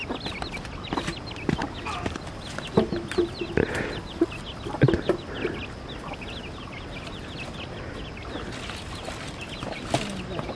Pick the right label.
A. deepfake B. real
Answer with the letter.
B